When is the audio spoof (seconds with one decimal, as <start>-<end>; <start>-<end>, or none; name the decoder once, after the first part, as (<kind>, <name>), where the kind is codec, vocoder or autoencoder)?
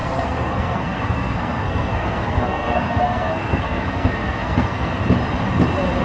0.0-5.0 (codec, SNAC)